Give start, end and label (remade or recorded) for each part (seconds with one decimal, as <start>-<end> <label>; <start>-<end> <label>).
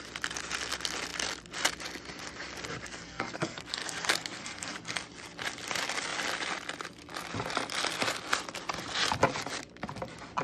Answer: 0.0-2.9 recorded; 2.9-5.0 remade; 5.0-10.4 recorded